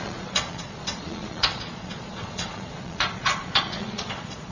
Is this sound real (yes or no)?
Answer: no